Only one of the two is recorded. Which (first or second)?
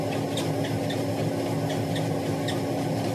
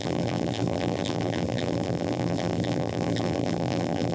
first